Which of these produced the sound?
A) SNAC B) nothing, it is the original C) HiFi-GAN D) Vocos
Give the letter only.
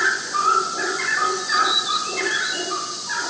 D